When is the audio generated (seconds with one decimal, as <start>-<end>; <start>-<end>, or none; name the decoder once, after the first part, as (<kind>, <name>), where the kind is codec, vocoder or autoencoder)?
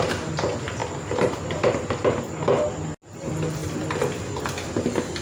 none